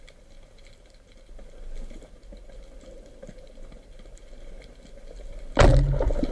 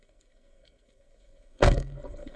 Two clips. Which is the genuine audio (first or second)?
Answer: first